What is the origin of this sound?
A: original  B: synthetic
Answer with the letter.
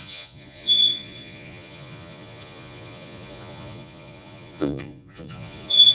B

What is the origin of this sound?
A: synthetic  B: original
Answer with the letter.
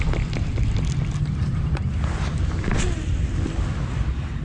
B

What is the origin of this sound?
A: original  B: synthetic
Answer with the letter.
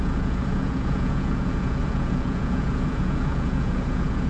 B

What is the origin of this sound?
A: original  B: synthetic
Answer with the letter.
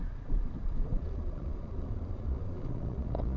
B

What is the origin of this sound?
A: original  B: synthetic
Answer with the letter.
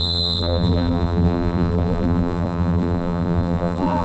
B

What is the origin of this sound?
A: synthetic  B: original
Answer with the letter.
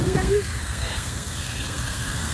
A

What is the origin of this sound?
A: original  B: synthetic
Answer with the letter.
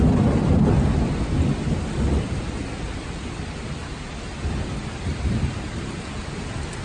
A